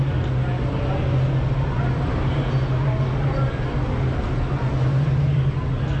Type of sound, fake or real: real